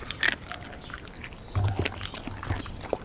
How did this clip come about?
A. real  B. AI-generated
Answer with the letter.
A